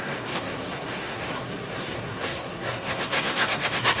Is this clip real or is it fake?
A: fake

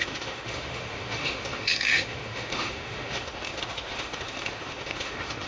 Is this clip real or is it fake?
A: fake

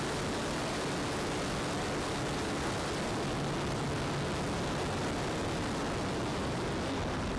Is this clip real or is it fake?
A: real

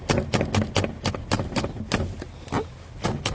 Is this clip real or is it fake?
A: real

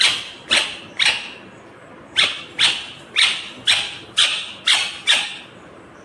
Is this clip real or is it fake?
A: fake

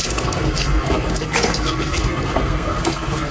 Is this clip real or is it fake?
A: fake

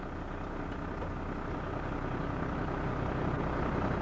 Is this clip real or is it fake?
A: real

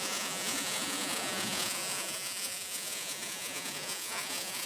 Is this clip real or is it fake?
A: fake